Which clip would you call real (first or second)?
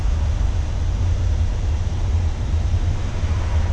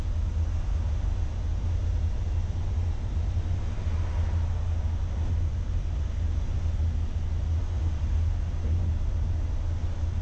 second